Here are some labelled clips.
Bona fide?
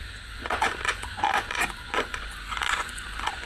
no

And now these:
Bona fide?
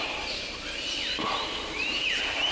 yes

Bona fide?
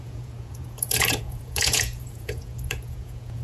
no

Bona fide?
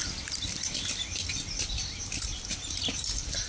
yes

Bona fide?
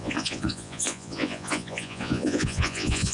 no